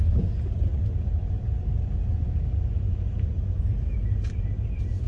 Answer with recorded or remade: recorded